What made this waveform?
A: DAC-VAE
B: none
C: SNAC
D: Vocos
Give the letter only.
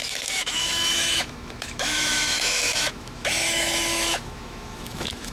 A